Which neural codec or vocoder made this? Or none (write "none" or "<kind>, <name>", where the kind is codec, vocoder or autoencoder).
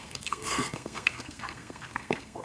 codec, SNAC